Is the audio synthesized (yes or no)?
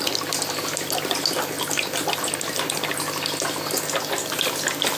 no